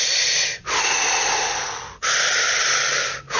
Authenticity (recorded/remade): recorded